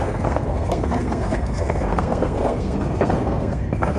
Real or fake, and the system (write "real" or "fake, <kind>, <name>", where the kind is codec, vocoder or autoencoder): fake, codec, SNAC